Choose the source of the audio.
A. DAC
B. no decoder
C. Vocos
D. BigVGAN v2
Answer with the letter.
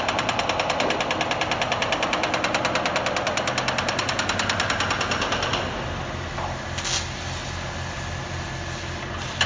B